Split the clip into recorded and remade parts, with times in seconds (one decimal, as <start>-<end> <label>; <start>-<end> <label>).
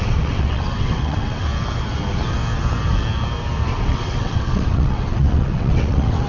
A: 0.0-1.5 remade; 1.5-3.7 recorded; 3.7-6.3 remade